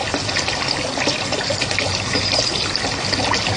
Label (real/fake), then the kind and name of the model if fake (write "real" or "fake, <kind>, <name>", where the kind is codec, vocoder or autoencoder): real